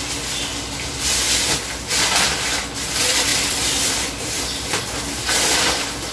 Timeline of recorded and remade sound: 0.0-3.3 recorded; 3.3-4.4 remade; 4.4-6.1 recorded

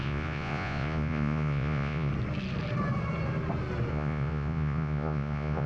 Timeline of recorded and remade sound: 0.0-2.1 remade; 2.1-3.9 recorded; 3.9-5.7 remade